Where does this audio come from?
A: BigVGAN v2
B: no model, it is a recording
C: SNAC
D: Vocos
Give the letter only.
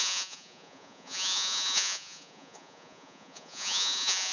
D